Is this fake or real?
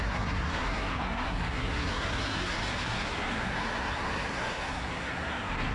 fake